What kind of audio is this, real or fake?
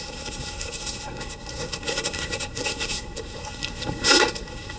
fake